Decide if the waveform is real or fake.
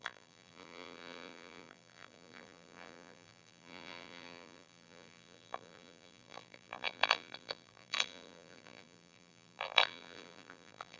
fake